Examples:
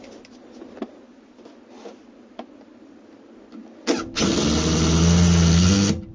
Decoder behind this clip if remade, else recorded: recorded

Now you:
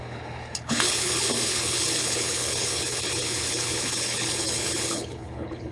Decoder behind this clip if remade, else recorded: remade, codec, HILCodec